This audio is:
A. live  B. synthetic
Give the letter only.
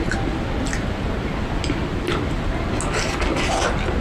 A